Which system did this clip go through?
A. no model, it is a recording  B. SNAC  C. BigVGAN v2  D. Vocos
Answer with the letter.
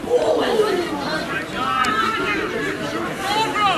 A